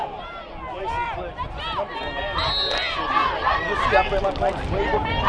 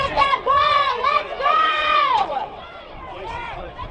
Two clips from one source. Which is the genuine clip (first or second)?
first